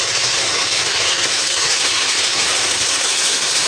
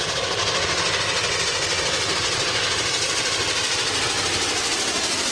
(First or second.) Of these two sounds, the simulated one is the first